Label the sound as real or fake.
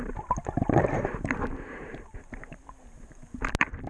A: fake